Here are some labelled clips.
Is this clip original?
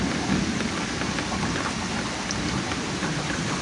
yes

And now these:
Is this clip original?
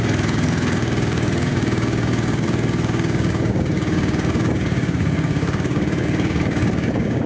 no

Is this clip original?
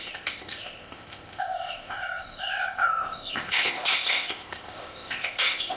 no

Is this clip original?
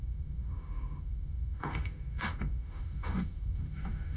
no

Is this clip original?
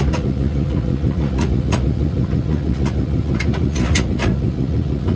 no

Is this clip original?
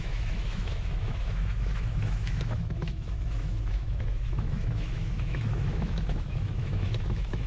no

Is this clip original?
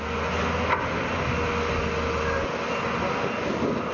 yes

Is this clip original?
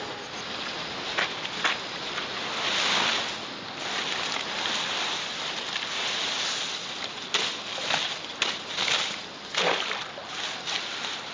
yes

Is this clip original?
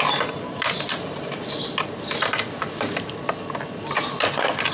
yes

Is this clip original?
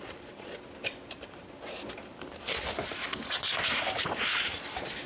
yes